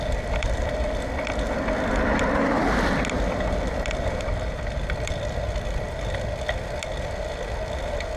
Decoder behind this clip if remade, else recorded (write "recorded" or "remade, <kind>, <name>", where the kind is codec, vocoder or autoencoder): recorded